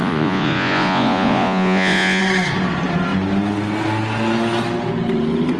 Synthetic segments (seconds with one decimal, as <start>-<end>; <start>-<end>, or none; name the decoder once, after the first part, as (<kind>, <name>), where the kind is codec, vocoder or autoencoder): 0.0-2.2 (vocoder, Vocos)